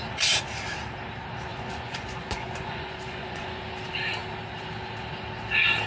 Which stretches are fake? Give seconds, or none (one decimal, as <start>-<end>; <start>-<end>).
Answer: 1.5-3.6